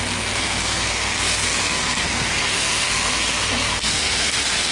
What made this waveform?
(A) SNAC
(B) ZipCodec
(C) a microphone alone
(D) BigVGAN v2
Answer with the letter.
A